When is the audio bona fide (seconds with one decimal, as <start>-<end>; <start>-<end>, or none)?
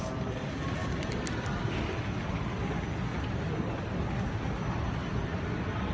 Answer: 0.0-5.9